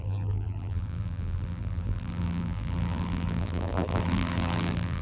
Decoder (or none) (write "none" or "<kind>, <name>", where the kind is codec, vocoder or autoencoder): vocoder, BigVGAN v2